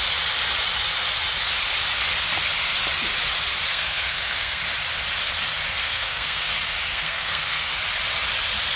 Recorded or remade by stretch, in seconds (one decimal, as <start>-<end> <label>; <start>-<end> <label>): 0.0-3.7 recorded; 3.7-4.6 remade; 4.6-5.8 recorded; 5.8-6.5 remade; 6.5-6.9 recorded; 6.9-7.8 remade; 7.8-8.8 recorded